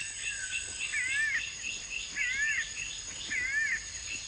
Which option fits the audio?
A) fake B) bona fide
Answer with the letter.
B